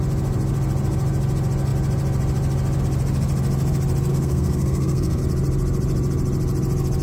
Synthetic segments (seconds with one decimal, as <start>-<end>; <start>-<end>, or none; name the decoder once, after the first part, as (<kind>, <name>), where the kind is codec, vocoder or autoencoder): 4.1-5.2 (codec, SNAC)